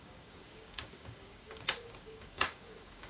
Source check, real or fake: fake